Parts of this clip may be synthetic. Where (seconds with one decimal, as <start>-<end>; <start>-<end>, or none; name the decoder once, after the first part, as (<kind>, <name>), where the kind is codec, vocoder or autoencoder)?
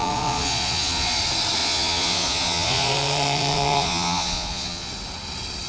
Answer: 0.0-1.2 (vocoder, Vocos); 1.6-4.9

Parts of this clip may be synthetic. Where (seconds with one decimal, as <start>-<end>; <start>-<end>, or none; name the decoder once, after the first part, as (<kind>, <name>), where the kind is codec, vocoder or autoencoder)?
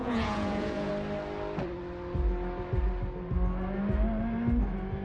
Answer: 0.0-0.9 (vocoder, Vocos)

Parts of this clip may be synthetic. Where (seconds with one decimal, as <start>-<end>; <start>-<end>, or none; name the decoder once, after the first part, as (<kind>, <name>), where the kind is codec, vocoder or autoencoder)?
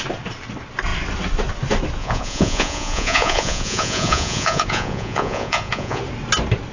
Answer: 2.0-6.0 (vocoder, Vocos)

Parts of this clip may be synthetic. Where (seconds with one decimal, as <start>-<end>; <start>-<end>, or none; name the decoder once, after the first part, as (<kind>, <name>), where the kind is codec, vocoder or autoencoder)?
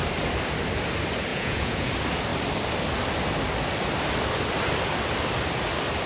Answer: 1.3-1.9 (vocoder, Vocos)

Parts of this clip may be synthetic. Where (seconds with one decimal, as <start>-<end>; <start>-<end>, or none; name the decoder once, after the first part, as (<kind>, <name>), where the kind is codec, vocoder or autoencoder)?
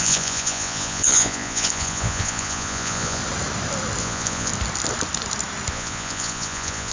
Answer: 0.0-3.2 (vocoder, Vocos); 4.0-4.5; 5.7-6.9